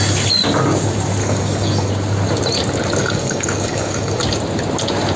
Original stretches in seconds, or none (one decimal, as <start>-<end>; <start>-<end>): 0.0-1.2; 1.9-3.0; 4.2-5.2